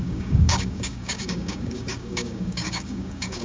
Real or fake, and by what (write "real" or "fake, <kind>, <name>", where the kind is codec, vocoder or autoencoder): fake, codec, DAC